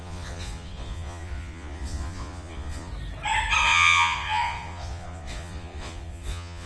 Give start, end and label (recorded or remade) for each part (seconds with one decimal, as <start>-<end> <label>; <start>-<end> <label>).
0.0-2.9 remade; 2.9-3.6 recorded; 3.6-6.7 remade